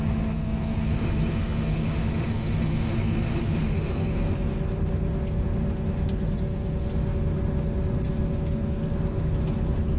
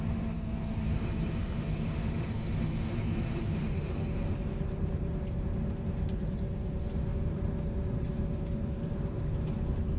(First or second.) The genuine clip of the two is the first